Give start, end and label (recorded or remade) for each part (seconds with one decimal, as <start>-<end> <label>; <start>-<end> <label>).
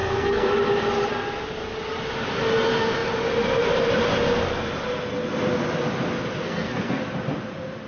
0.0-0.5 remade; 0.5-6.4 recorded; 6.4-7.0 remade; 7.0-7.9 recorded